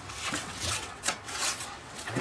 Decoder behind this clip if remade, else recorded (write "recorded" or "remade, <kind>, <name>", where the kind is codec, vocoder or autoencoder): remade, vocoder, WaveNeXt